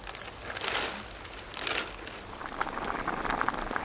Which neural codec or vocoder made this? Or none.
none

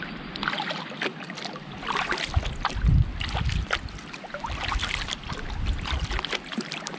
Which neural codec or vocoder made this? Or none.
none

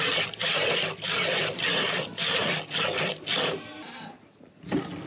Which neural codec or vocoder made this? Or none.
none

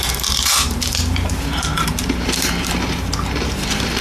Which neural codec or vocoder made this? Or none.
vocoder, BigVGAN v2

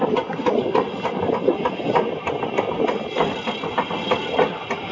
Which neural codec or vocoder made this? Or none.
vocoder, BigVGAN v2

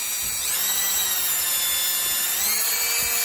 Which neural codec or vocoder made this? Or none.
none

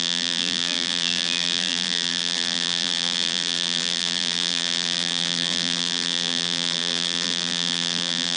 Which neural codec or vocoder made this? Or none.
vocoder, BigVGAN v2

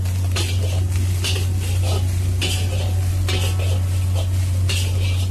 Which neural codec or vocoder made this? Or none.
none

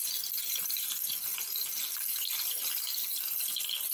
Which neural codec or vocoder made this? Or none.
none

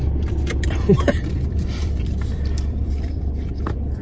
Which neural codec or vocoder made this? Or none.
vocoder, BigVGAN v2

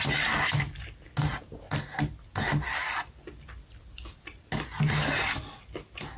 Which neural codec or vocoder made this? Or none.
none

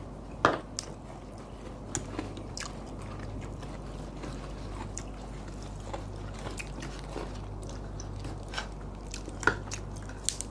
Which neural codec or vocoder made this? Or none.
none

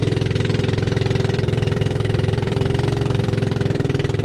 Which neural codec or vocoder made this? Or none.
vocoder, BigVGAN v2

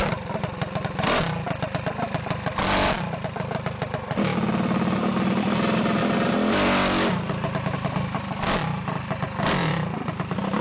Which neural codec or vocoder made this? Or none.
none